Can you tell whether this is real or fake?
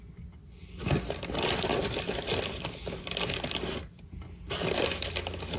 real